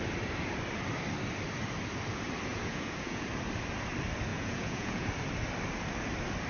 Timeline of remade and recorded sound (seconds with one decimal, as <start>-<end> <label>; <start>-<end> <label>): 0.0-2.5 recorded; 2.5-3.3 remade; 3.3-4.3 recorded; 4.3-5.1 remade; 5.1-6.5 recorded